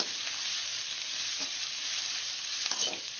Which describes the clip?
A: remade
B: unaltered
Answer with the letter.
B